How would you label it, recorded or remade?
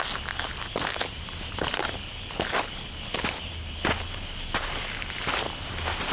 recorded